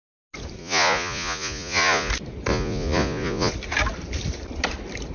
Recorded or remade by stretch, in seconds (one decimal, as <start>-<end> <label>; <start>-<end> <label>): 0.0-0.6 recorded; 0.6-2.1 remade; 2.1-2.5 recorded; 2.5-3.5 remade; 3.5-5.1 recorded